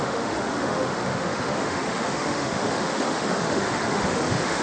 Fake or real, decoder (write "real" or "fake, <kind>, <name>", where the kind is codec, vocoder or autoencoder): fake, autoencoder, DAC-VAE